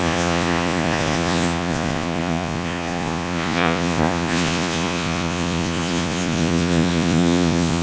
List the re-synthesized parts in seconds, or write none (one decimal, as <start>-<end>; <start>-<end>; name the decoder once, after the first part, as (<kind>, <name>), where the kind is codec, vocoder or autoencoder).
0.0-7.8 (vocoder, Vocos)